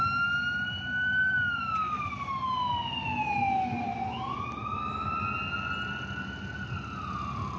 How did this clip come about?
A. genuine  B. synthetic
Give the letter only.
A